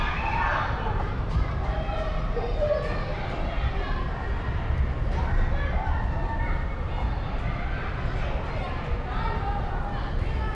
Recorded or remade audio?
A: recorded